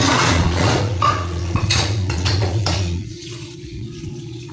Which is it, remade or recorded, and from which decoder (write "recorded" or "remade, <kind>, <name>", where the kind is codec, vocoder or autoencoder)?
remade, vocoder, Vocos